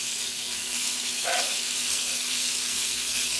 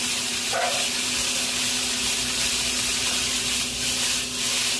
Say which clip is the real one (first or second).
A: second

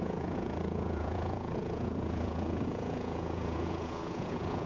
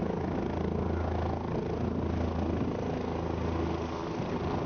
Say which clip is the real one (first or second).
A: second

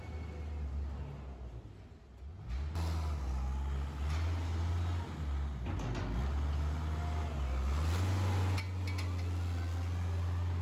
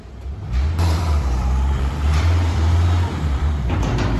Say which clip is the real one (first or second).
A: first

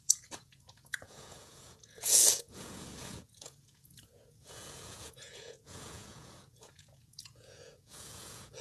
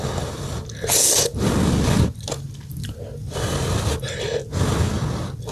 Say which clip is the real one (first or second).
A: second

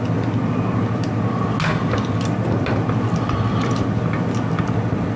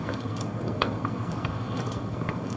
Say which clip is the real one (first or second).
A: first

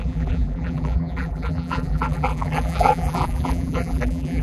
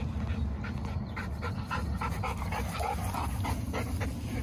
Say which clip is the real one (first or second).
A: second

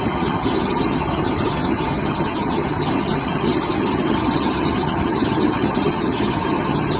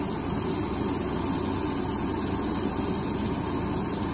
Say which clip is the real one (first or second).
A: second